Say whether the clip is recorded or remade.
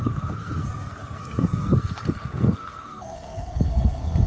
remade